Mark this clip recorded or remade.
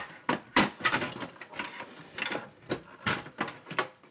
recorded